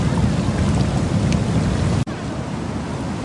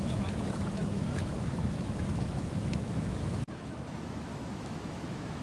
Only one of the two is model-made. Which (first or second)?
second